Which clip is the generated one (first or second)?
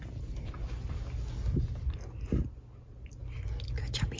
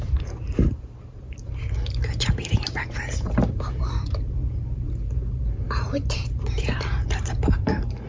second